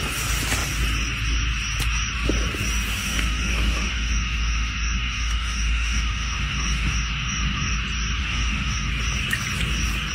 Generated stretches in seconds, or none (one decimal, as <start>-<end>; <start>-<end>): 2.9-7.7; 8.2-8.9